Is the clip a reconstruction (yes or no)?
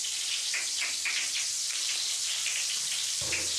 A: yes